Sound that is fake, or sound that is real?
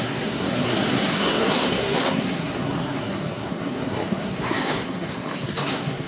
fake